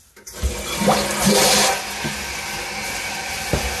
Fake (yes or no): no